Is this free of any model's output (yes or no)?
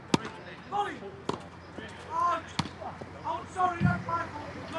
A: yes